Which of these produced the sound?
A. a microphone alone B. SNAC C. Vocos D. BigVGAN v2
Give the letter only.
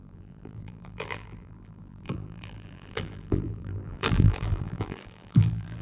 D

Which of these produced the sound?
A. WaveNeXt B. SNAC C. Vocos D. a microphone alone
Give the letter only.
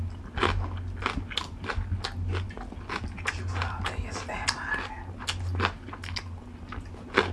D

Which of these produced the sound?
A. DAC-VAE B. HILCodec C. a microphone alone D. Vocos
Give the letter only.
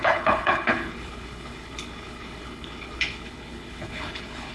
B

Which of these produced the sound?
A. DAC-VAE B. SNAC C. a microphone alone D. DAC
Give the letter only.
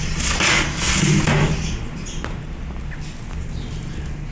C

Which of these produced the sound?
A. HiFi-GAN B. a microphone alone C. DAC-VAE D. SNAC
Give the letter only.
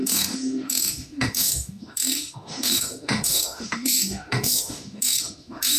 C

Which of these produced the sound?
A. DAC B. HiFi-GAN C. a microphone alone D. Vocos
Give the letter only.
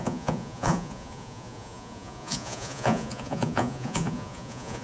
D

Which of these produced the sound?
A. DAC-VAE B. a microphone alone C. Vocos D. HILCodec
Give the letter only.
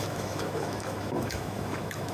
A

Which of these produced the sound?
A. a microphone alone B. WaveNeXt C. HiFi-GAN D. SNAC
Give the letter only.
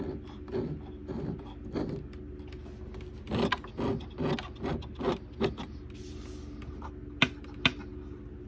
A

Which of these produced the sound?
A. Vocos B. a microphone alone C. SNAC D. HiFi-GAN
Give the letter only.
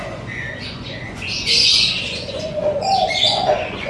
A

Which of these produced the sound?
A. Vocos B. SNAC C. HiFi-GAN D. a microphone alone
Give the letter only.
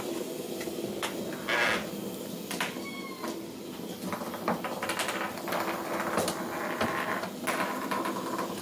D